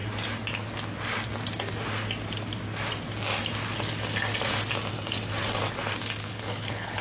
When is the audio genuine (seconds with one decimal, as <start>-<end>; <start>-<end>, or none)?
0.0-6.2

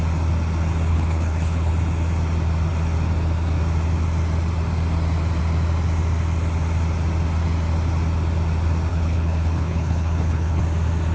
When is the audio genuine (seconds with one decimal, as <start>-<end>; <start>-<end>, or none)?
0.0-0.9; 1.7-8.9; 10.6-11.1

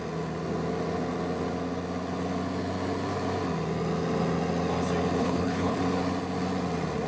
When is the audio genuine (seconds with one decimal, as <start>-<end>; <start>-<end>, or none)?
0.0-5.2; 5.8-7.1

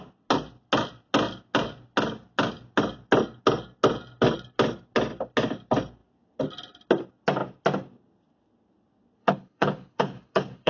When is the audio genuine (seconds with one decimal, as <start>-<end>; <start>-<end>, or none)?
0.0-9.2

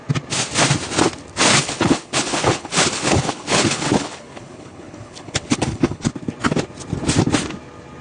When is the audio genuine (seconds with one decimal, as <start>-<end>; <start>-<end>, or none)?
0.0-1.5; 6.1-8.0

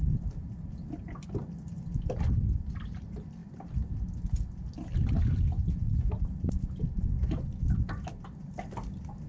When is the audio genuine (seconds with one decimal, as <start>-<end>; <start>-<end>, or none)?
0.0-9.3

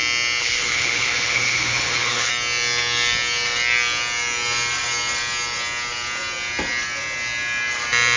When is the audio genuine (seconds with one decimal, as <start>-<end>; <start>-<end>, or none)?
0.0-0.4; 2.3-8.2